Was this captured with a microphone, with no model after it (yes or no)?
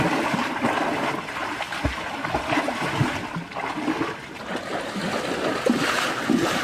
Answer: yes